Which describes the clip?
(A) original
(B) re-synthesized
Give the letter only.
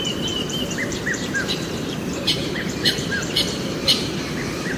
B